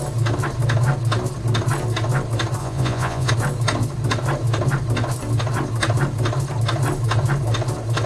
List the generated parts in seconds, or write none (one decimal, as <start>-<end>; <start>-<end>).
2.6-3.3